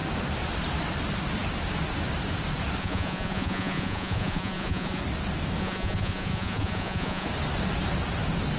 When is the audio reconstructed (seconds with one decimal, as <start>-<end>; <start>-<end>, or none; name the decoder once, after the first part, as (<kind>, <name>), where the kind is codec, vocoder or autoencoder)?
2.8-5.0 (vocoder, Vocos); 5.6-7.3